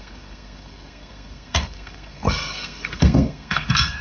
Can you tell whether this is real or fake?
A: fake